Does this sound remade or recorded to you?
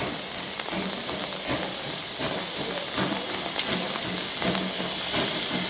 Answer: recorded